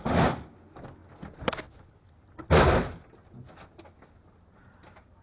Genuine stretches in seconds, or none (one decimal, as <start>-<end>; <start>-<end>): 0.0-5.2